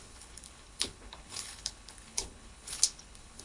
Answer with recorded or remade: remade